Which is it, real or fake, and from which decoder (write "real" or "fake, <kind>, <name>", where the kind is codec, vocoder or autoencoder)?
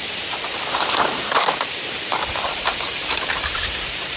fake, vocoder, BigVGAN v2